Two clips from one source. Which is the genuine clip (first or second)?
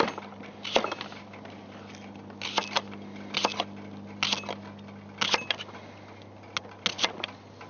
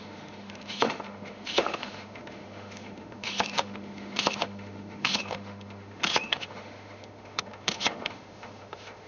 first